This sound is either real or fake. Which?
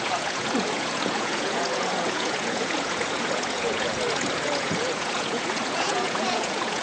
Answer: fake